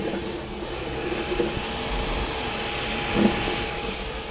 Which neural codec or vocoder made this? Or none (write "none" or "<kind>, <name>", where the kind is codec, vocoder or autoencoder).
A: none